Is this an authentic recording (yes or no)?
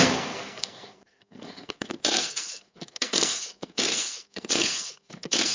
no